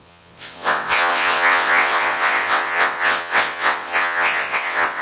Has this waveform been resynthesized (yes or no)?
yes